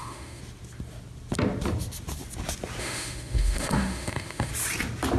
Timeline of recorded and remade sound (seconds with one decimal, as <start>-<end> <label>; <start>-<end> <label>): 0.0-0.4 remade; 0.4-2.8 recorded; 2.8-4.5 remade; 4.5-5.2 recorded